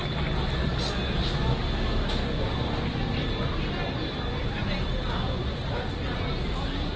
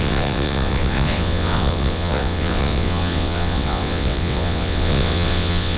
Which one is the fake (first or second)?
second